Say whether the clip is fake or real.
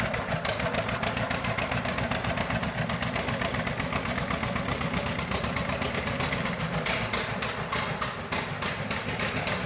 real